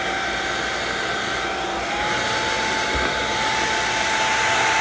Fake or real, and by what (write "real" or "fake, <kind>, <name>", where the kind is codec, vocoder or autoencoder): real